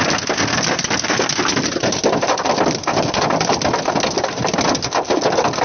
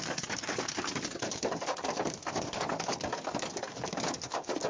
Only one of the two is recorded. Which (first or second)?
first